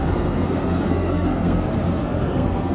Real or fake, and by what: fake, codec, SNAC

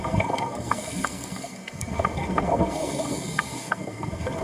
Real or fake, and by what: fake, codec, SNAC